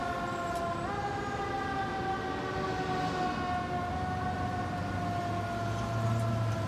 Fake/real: real